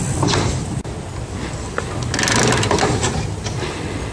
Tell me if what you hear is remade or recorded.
recorded